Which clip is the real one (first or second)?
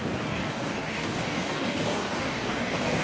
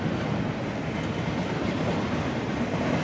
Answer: second